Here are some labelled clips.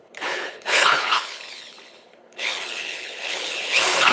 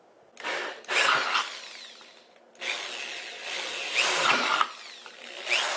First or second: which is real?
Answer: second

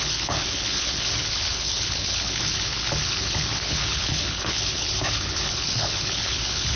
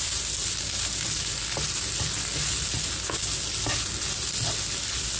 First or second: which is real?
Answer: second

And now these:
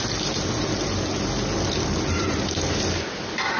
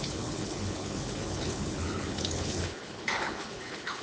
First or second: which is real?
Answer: first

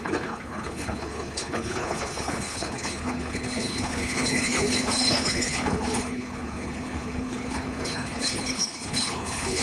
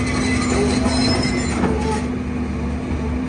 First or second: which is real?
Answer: second